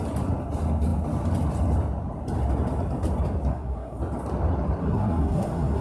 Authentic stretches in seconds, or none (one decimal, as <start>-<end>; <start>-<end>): 0.0-3.5; 4.0-4.8